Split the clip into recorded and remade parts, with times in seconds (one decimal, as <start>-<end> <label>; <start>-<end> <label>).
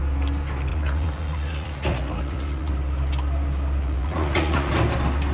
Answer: 0.0-0.7 recorded; 0.7-2.7 remade; 2.7-3.8 recorded; 3.8-4.7 remade; 4.7-5.3 recorded